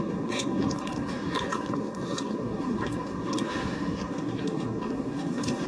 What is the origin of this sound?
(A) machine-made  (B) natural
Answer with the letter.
A